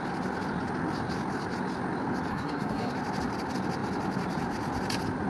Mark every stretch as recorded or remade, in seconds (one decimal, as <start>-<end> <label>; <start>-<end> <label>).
0.0-2.3 recorded; 2.3-2.9 remade; 2.9-5.3 recorded